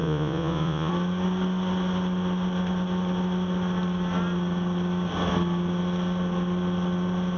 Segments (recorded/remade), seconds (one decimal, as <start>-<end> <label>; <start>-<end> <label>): 0.0-0.9 remade; 0.9-7.4 recorded